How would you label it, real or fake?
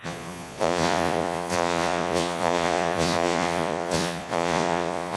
fake